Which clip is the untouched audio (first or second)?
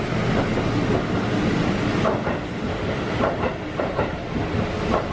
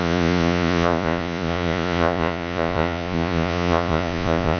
first